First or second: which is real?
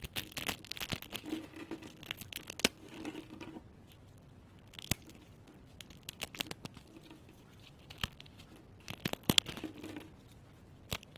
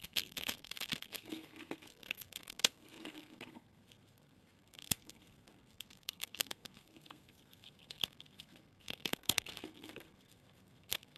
first